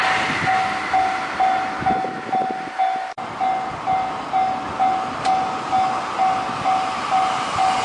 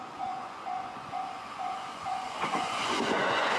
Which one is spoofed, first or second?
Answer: second